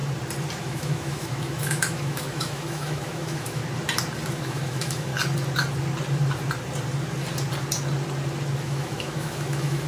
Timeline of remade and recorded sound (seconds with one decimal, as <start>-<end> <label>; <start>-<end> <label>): 0.0-0.6 recorded; 0.6-3.6 remade; 3.6-4.3 recorded; 4.3-5.1 remade; 5.1-8.6 recorded; 8.6-9.9 remade